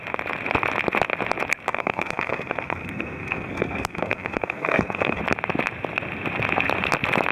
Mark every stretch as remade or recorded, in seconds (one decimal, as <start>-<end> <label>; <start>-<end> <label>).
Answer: 0.0-1.7 recorded; 1.7-5.2 remade; 5.2-7.3 recorded